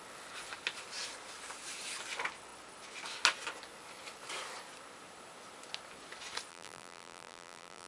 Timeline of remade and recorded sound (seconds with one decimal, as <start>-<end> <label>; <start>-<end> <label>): 0.0-6.5 recorded; 6.5-7.9 remade